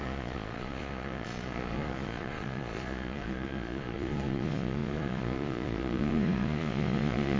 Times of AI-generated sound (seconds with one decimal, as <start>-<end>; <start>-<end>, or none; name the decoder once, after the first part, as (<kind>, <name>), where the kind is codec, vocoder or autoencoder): 0.0-7.4 (vocoder, Vocos)